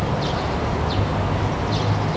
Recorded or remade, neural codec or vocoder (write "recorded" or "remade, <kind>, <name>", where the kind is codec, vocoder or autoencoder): recorded